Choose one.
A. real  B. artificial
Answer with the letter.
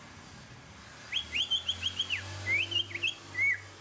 A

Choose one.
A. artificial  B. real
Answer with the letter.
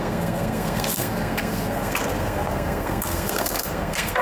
A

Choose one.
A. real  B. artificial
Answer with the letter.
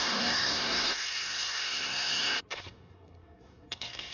B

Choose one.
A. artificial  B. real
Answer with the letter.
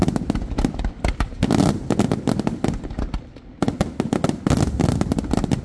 B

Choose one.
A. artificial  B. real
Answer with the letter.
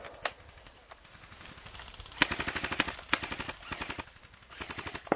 B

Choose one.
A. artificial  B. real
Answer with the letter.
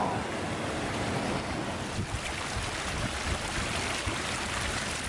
B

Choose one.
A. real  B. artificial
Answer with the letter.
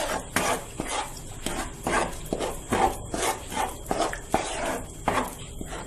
A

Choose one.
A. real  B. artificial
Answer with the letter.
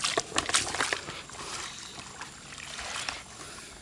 A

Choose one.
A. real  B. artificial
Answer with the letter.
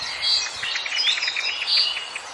A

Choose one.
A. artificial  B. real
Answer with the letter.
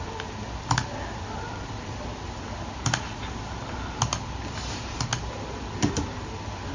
B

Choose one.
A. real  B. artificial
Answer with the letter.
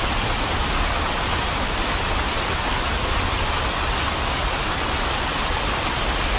A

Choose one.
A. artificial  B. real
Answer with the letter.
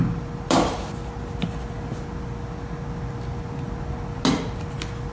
B